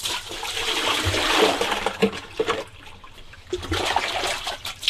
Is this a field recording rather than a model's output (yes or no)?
no